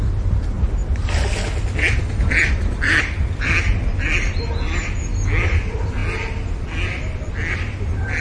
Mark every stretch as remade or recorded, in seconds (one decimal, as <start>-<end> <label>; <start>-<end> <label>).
0.0-8.2 recorded